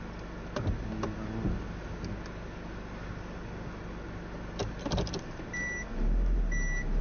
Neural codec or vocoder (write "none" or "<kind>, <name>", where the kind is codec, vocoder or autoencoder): none